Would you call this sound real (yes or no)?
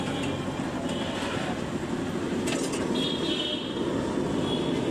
yes